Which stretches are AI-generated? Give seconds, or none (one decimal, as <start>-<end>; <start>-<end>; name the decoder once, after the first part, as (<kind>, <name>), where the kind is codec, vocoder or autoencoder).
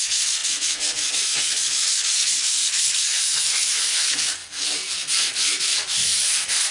0.0-6.7 (codec, SNAC)